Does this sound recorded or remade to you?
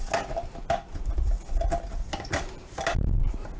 recorded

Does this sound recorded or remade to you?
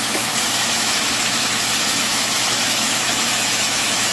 remade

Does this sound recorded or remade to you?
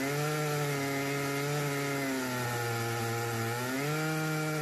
recorded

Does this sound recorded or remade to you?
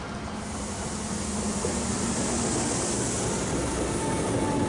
recorded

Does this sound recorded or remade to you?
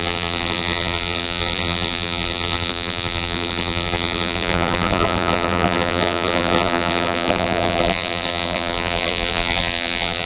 remade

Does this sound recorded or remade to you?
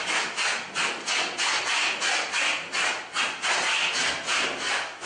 recorded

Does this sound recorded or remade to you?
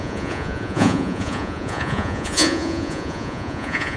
remade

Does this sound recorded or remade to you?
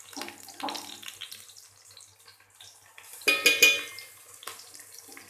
recorded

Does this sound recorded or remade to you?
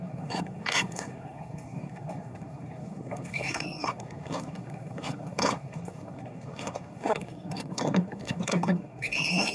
remade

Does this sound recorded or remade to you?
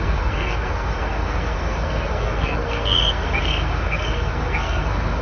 remade